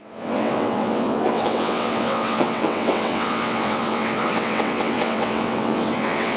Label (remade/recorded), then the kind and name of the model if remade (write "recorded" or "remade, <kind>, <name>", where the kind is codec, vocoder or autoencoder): remade, vocoder, WaveNeXt